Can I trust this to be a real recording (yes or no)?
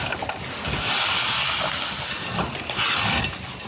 yes